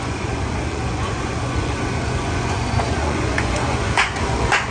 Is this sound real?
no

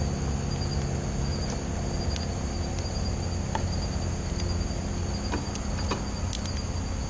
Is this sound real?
yes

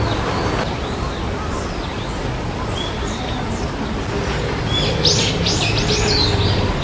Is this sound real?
yes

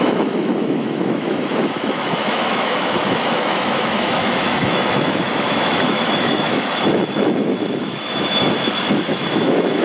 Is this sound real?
no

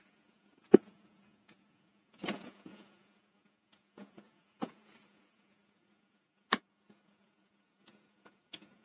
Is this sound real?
no